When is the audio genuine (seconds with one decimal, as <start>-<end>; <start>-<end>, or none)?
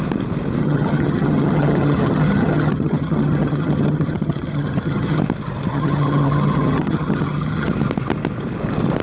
0.0-0.6; 5.2-5.7; 7.7-9.0